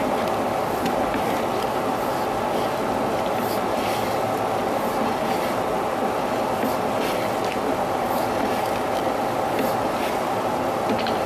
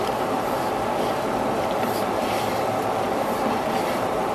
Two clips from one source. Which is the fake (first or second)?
second